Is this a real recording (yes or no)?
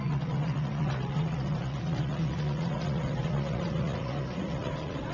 no